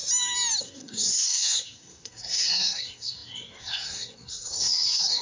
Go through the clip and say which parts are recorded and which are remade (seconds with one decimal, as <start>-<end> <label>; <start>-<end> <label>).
0.0-0.6 recorded; 0.6-5.2 remade